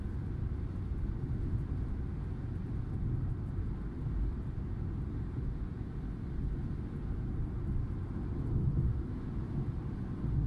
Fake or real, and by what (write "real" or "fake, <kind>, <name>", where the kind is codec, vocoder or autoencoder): real